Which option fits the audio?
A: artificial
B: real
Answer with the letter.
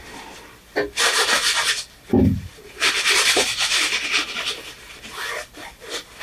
B